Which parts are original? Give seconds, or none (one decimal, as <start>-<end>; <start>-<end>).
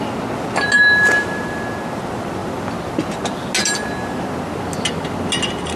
0.0-5.8